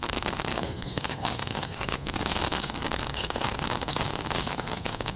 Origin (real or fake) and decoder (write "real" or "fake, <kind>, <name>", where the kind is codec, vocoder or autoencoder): fake, codec, SNAC